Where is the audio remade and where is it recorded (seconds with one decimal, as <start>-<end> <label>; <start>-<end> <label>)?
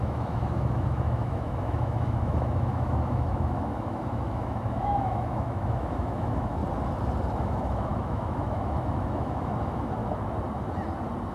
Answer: 0.0-6.6 remade; 6.6-7.4 recorded; 7.4-10.0 remade; 10.0-11.3 recorded